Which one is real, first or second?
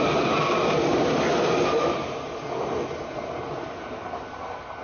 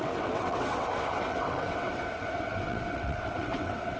first